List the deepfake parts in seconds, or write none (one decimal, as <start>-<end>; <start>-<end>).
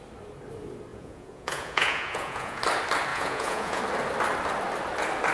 0.9-2.6; 3.1-3.8